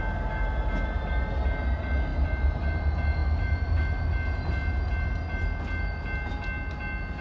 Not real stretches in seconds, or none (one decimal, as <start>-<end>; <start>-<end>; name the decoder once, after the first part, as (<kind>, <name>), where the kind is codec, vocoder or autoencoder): 2.1-2.7 (vocoder, BigVGAN v2); 3.2-3.8